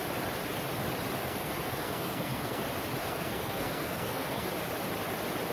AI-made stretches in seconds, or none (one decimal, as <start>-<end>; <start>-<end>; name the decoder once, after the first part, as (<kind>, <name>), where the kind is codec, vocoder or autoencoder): 1.2-2.6 (codec, SNAC); 3.0-4.5